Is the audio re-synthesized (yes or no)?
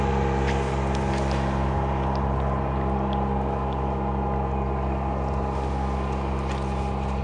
no